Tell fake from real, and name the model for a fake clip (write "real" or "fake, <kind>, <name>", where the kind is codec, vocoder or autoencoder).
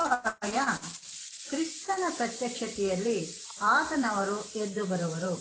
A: fake, vocoder, BigVGAN v2